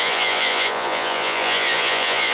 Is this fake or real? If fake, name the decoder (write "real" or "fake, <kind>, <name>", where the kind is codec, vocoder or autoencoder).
fake, vocoder, Vocos